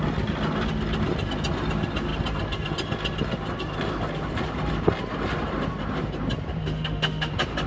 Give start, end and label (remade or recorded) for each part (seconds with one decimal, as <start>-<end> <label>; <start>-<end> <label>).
0.0-6.6 recorded; 6.6-7.3 remade; 7.3-7.7 recorded